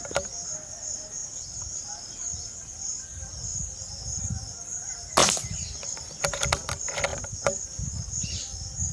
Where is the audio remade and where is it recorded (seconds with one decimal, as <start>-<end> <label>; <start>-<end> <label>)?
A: 0.0-1.2 recorded; 1.2-2.1 remade; 2.1-3.5 recorded; 3.5-4.2 remade; 4.2-5.2 recorded; 5.2-6.0 remade; 6.0-7.1 recorded; 7.1-7.6 remade; 7.6-8.9 recorded